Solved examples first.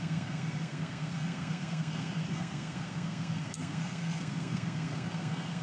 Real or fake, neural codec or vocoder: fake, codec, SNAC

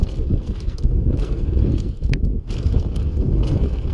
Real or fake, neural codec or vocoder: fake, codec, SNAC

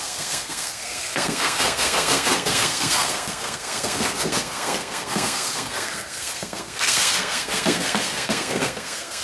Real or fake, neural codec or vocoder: fake, codec, SNAC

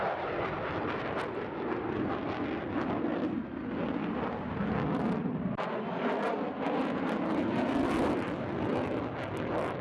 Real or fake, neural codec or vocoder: real